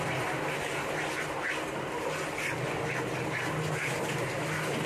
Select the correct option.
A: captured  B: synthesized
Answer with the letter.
A